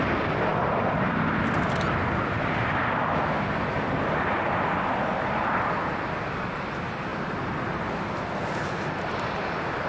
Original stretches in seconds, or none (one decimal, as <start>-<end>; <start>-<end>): 0.0-9.9